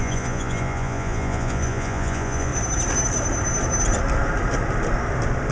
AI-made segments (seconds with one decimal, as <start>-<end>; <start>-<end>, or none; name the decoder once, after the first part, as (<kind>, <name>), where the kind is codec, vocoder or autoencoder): 0.0-2.5 (vocoder, Vocos)

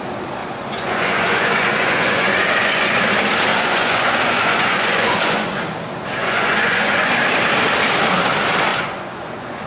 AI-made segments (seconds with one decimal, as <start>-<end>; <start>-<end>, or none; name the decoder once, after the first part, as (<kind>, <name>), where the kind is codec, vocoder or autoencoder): 0.4-3.0 (vocoder, Vocos); 3.5-5.6; 6.2-7.1; 8.7-9.7

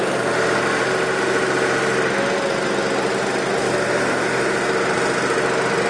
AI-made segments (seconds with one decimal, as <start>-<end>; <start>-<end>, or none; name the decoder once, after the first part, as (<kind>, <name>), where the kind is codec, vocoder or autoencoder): none

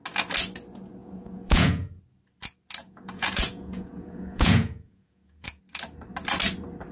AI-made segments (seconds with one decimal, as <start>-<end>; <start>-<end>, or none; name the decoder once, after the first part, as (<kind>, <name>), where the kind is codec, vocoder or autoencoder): 1.0-2.0 (vocoder, Vocos); 2.8-5.6

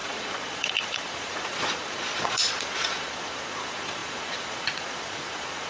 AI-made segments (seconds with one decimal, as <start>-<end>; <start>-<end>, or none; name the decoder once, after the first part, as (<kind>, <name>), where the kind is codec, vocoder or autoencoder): 0.0-5.7 (vocoder, Vocos)